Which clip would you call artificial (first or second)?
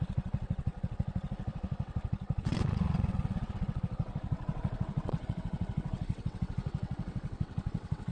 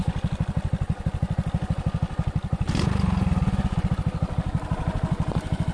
first